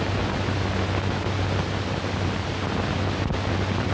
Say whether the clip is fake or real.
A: real